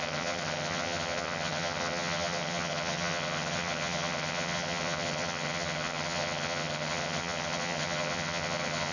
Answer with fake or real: fake